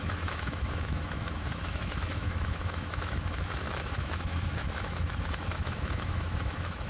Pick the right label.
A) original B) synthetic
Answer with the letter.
B